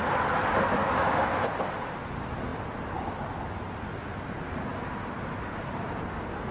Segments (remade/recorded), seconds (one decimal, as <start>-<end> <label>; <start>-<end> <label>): 0.0-0.8 recorded; 0.8-1.4 remade; 1.4-6.5 recorded